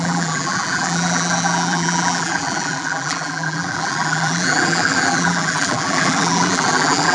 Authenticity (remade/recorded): remade